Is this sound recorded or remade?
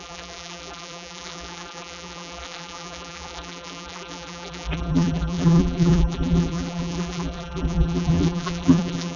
remade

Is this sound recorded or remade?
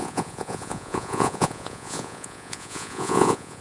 remade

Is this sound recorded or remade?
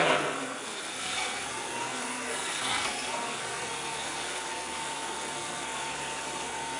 remade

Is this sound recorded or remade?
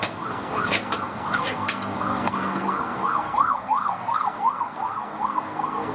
remade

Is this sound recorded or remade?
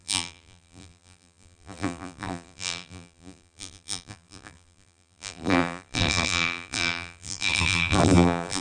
remade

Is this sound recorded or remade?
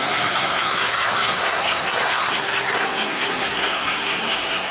remade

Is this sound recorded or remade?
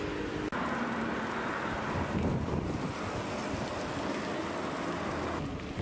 recorded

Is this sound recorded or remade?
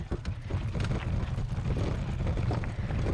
recorded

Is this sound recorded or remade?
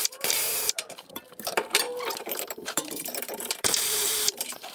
remade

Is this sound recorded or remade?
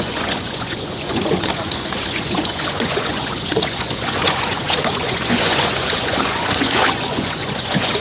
remade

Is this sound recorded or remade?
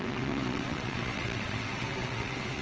remade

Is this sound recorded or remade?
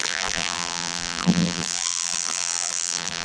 remade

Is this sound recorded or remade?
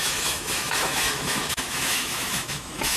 remade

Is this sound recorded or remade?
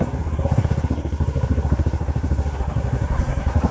remade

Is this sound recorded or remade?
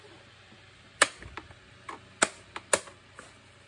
recorded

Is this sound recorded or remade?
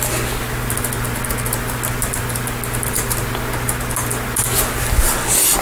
recorded